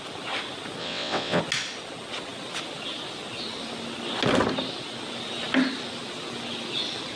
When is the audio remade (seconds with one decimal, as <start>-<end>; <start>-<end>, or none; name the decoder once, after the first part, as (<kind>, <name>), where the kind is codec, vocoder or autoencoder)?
0.8-1.4 (vocoder, WaveNeXt)